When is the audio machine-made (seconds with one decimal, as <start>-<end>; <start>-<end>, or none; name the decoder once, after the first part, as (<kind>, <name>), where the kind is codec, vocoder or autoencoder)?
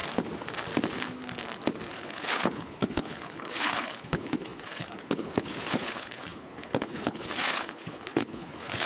1.9-8.9 (codec, HILCodec)